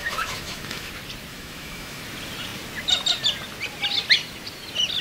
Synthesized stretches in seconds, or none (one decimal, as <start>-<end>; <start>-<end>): 0.0-0.9; 1.3-2.0